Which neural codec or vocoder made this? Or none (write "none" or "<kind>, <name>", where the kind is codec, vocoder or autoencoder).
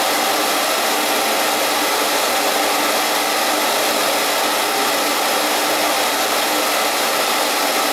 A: none